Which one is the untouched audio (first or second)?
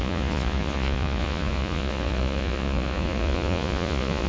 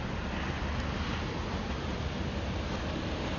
second